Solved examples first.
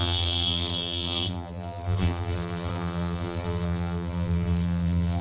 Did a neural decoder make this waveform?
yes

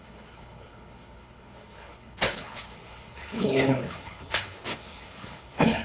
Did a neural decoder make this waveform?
yes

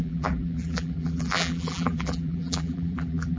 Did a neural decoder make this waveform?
yes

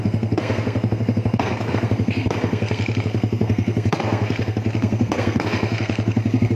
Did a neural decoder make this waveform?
yes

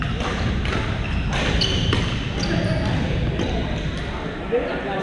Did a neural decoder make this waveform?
no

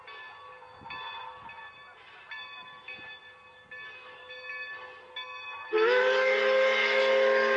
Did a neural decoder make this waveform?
no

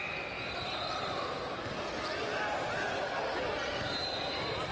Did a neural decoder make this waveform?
no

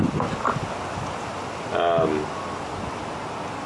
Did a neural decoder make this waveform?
no